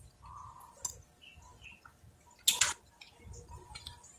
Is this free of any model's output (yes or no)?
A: yes